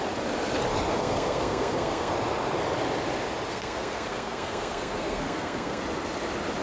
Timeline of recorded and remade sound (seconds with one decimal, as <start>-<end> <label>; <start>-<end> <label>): 0.0-0.9 recorded; 0.9-2.1 remade; 2.1-3.5 recorded; 3.5-5.8 remade; 5.8-6.6 recorded